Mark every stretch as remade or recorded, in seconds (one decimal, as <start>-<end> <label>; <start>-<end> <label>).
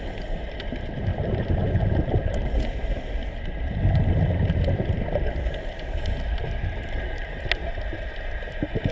0.0-1.1 remade; 1.1-2.1 recorded; 2.1-3.2 remade; 3.2-4.9 recorded; 4.9-7.6 remade; 7.6-8.3 recorded; 8.3-8.9 remade